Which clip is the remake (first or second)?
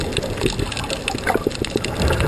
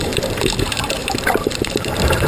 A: second